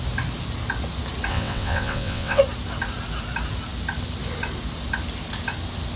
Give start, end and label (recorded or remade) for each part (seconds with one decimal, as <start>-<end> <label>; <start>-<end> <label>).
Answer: 0.0-1.3 recorded; 1.3-2.4 remade; 2.4-6.0 recorded

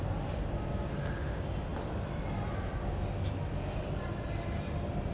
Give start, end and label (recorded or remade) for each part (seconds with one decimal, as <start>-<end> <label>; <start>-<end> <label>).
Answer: 0.0-5.1 recorded